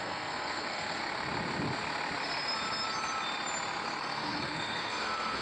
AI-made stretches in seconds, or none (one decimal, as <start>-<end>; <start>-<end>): 0.0-1.0; 4.0-5.4